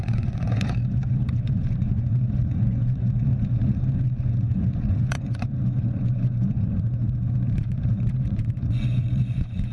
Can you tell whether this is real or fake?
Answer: fake